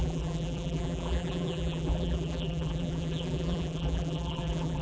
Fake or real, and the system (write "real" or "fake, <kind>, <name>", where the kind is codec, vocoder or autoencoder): fake, vocoder, BigVGAN v2